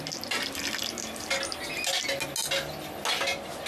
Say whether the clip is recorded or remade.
recorded